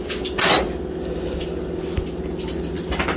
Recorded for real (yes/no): yes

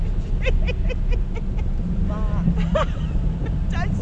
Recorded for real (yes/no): yes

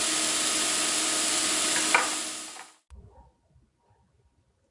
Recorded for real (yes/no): yes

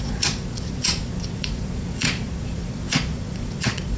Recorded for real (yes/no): no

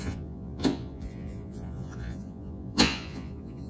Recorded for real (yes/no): no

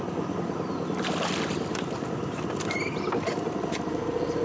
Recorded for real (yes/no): yes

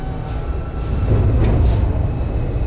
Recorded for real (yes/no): yes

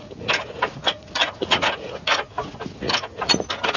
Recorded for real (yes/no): no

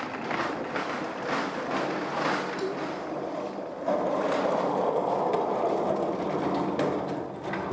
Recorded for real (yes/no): yes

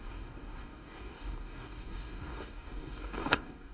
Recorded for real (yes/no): no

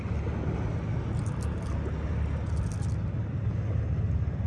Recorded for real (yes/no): yes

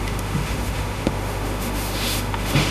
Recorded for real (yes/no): no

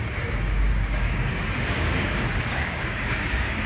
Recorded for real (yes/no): no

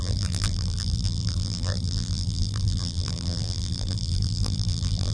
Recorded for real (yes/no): no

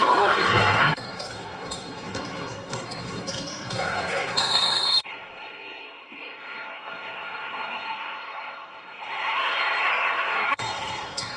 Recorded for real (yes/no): no